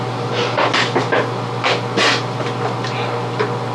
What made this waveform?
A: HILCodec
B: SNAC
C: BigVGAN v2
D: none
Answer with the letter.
D